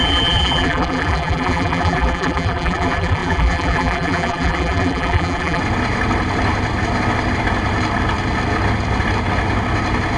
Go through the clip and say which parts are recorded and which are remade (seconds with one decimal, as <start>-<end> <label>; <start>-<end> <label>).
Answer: 0.0-5.6 remade; 5.6-10.2 recorded